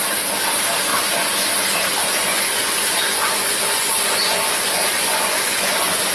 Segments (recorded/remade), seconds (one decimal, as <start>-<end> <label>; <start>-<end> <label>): 0.0-0.9 recorded; 0.9-1.6 remade; 1.6-2.0 recorded; 2.0-6.1 remade